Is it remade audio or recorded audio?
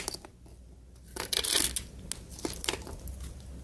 recorded